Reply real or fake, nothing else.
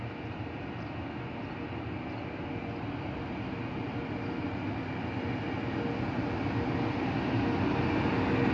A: real